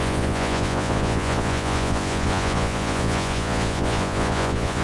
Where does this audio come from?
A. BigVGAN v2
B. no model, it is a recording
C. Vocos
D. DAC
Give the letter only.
C